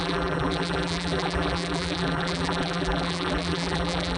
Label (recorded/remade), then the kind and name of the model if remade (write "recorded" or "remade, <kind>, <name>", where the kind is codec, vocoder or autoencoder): remade, vocoder, BigVGAN v2